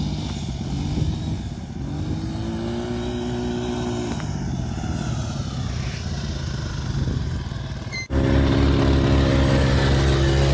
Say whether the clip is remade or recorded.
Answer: recorded